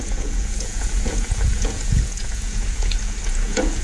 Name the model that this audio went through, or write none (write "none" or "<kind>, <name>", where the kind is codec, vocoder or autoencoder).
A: vocoder, Vocos